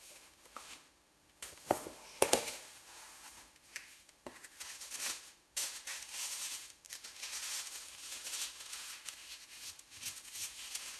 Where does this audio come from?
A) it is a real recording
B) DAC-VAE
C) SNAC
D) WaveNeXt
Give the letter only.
B